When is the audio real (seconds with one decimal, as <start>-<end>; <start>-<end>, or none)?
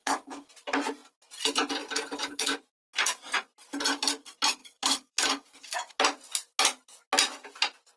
0.5-4.6; 5.9-8.0